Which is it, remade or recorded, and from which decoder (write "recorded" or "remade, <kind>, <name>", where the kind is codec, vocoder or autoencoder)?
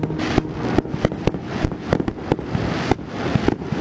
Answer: recorded